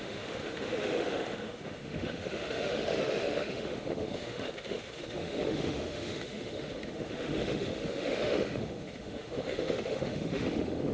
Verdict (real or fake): fake